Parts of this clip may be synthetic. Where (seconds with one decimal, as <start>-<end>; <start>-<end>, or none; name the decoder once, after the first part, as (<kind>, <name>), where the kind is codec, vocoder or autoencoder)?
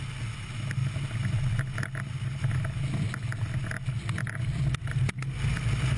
none